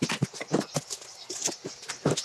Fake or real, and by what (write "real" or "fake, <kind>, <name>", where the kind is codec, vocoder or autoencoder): real